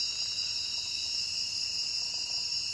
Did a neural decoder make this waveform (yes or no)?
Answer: yes